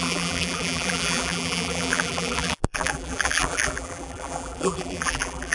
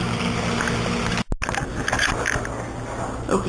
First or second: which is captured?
second